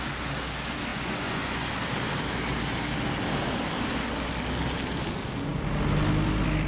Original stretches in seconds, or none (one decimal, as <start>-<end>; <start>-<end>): 0.0-0.9; 1.7-6.7